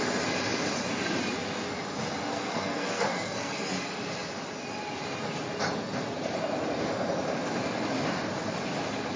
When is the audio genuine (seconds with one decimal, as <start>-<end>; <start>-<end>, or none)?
0.0-2.3; 3.7-9.2

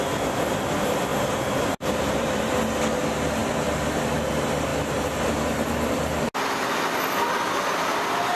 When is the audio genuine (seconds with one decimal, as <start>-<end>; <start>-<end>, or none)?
0.0-1.1; 2.5-8.4

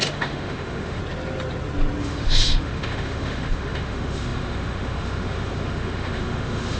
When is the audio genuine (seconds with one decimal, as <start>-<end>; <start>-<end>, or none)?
1.0-2.0

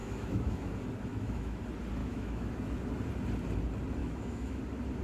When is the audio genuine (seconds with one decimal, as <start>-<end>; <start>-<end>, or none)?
0.7-1.1; 1.6-2.0; 2.5-4.0; 4.6-5.0